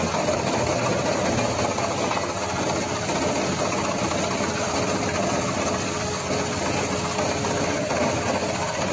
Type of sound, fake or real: real